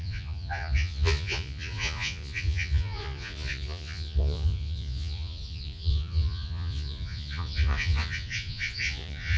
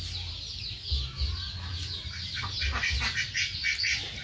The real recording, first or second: second